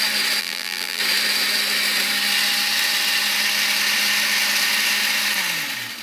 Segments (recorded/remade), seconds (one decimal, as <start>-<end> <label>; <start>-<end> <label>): 0.0-0.4 recorded; 0.4-1.0 remade; 1.0-6.0 recorded